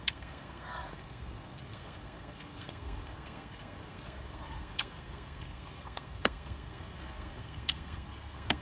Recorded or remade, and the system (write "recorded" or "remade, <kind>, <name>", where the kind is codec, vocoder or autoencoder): remade, codec, SNAC